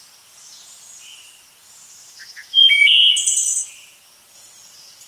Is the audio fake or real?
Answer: fake